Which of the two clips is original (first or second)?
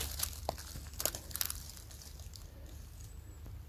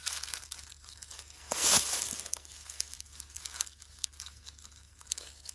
first